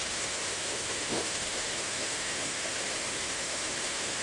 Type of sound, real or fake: fake